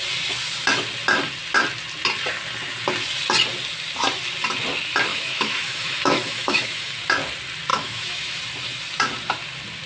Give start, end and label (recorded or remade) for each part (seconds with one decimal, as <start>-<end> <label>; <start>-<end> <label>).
0.0-5.1 recorded; 5.1-6.9 remade; 6.9-7.7 recorded; 7.7-8.4 remade; 8.4-9.9 recorded